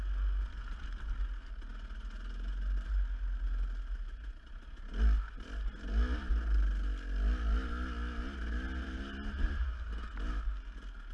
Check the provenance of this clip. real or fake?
real